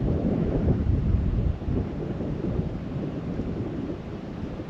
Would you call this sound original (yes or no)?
no